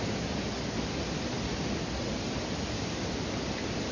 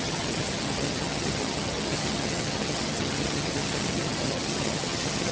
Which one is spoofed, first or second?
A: second